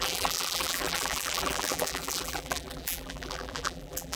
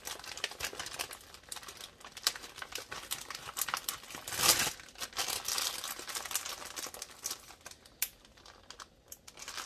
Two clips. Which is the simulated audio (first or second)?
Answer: first